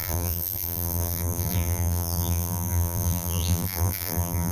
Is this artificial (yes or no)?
yes